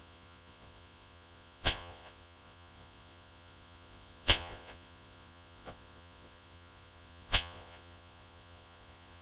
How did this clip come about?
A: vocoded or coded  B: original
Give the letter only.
A